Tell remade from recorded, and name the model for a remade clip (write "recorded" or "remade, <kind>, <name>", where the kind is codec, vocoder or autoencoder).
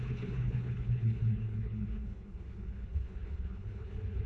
remade, codec, HILCodec